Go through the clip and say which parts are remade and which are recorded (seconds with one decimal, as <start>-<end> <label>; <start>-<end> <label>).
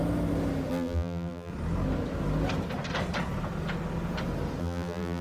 0.0-0.7 recorded; 0.7-1.5 remade; 1.5-4.6 recorded; 4.6-5.2 remade